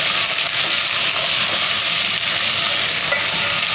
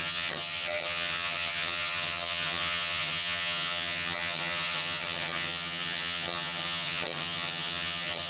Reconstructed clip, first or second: second